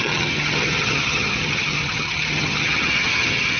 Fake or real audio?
fake